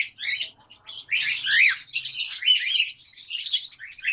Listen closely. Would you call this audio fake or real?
real